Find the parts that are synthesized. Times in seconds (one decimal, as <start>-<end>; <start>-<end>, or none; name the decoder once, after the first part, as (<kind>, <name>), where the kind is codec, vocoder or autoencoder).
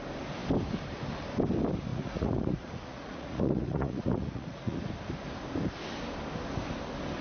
1.9-4.9 (vocoder, Vocos)